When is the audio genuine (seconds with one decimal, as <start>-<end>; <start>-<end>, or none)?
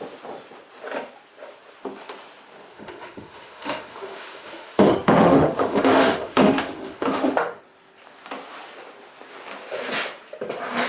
0.0-2.7; 7.6-10.9